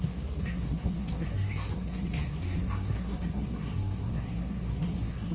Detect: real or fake fake